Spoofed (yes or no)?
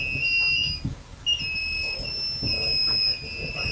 no